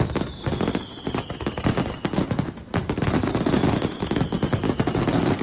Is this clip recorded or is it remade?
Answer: recorded